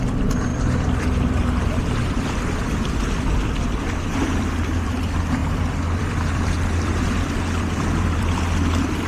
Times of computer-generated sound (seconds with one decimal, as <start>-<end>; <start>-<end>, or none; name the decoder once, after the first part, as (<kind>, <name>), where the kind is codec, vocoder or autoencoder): 0.0-9.1 (vocoder, BigVGAN v2)